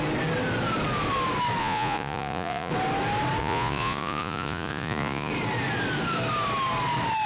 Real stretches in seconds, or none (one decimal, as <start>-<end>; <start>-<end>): 0.0-1.6; 2.7-3.4; 5.3-7.3